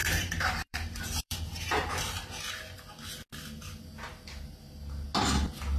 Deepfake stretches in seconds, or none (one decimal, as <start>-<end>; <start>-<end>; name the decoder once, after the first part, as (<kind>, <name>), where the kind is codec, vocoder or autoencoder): 0.0-1.9 (vocoder, BigVGAN v2)